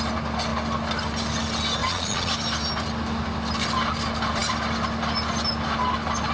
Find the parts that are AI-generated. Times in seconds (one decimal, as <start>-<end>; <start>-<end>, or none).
1.8-2.3